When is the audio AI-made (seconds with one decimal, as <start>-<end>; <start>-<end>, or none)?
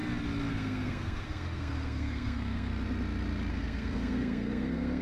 0.5-2.7; 3.5-5.0